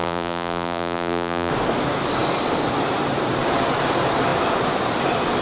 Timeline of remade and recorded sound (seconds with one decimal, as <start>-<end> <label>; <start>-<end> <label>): 0.0-1.5 remade; 1.5-5.4 recorded